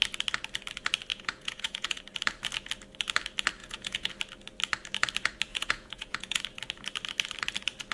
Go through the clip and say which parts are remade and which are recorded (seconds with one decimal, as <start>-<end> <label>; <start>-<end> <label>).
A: 0.0-1.1 recorded; 1.1-2.0 remade; 2.0-3.6 recorded; 3.6-4.1 remade; 4.1-5.5 recorded; 5.5-6.4 remade; 6.4-7.9 recorded

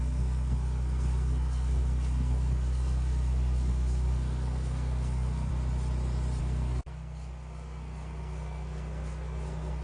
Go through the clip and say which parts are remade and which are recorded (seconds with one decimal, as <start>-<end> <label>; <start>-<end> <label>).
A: 0.0-5.5 remade; 5.5-6.4 recorded; 6.4-9.8 remade

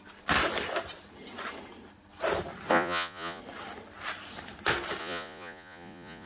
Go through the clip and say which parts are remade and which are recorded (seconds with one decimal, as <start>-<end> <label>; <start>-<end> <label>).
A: 0.0-2.7 recorded; 2.7-3.4 remade; 3.4-5.0 recorded; 5.0-6.3 remade

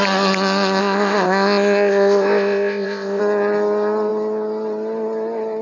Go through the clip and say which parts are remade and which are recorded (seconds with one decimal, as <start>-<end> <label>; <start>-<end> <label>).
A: 0.0-0.8 recorded; 0.8-3.2 remade; 3.2-5.6 recorded

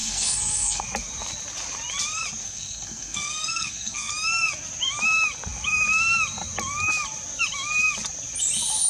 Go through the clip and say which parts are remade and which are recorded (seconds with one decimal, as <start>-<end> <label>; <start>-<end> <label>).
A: 0.0-0.8 remade; 0.8-2.4 recorded; 2.4-4.1 remade; 4.1-8.9 recorded

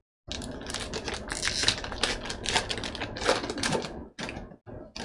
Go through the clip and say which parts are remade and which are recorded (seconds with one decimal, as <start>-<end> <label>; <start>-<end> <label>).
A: 0.0-5.0 recorded

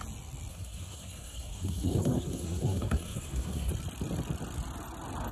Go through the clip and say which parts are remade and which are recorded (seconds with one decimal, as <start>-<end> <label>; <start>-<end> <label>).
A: 0.0-0.5 recorded; 0.5-3.7 remade; 3.7-5.3 recorded